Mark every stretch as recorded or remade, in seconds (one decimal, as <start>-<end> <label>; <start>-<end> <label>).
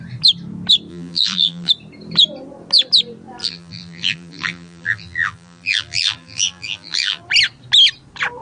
0.0-0.9 recorded; 0.9-1.7 remade; 1.7-3.4 recorded; 3.4-7.2 remade; 7.2-8.4 recorded